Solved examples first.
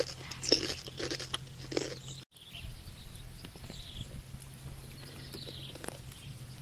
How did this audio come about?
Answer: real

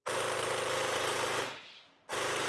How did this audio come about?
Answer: real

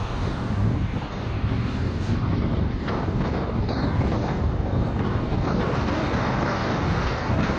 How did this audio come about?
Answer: fake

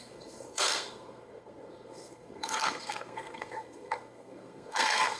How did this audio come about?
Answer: fake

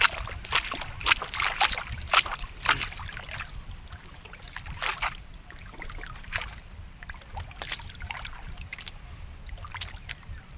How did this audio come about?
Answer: real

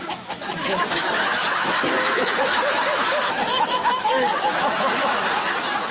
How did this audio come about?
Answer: fake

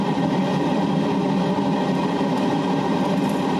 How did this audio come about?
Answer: fake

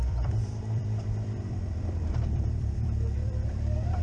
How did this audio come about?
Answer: fake